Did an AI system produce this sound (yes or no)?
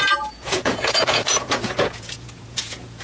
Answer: yes